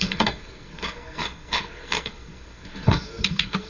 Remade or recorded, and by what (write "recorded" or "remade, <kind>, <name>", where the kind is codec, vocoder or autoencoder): remade, codec, SNAC